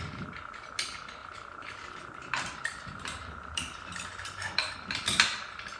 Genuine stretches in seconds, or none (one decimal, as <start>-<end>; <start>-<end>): 0.0-1.2; 4.7-5.8